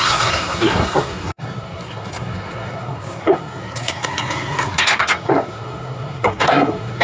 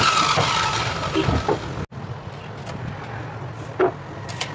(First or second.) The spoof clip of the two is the first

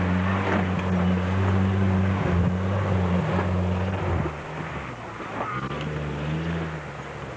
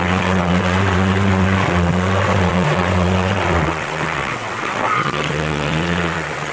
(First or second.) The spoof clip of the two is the second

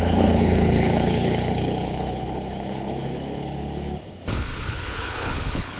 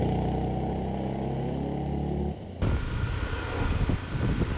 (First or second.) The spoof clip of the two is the first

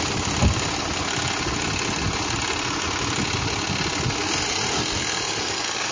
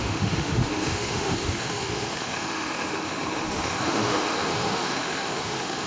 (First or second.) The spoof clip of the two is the second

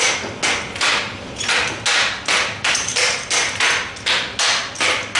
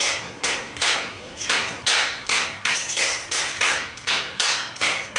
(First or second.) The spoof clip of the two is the second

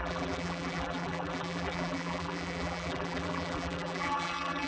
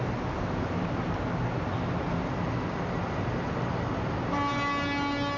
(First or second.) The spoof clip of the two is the first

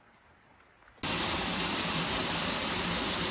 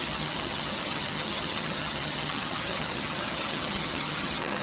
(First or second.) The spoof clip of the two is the second